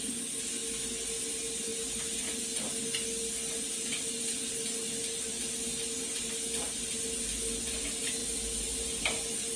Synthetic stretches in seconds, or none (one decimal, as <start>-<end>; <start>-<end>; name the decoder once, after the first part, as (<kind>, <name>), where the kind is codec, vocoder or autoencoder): none